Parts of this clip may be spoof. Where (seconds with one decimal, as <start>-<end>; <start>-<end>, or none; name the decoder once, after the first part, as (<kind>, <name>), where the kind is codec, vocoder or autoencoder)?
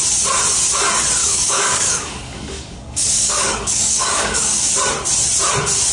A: 1.2-4.7 (codec, DAC)